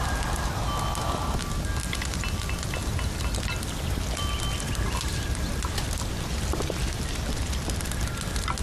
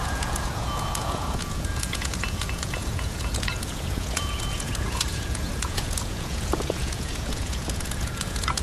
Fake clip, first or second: second